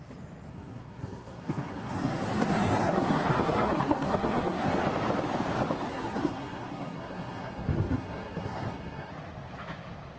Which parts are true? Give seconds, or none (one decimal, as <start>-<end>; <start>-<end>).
0.0-0.5; 4.7-5.9; 9.1-10.2